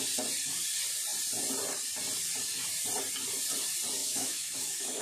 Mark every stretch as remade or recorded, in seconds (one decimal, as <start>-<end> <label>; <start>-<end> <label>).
0.0-4.0 recorded; 4.0-5.0 remade

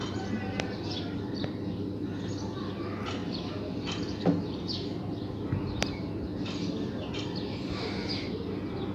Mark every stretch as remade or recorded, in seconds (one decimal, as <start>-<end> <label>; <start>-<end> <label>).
0.0-8.9 recorded

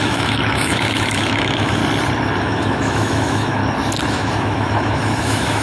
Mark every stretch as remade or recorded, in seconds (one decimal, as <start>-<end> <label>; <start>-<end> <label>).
0.0-1.8 remade; 1.8-2.4 recorded; 2.4-3.6 remade; 3.6-4.1 recorded; 4.1-5.6 remade

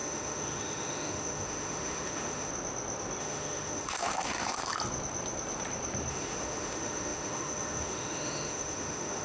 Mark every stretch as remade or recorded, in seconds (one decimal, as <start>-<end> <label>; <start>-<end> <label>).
0.0-2.5 remade; 2.5-3.2 recorded; 3.2-4.7 remade; 4.7-6.1 recorded; 6.1-9.2 remade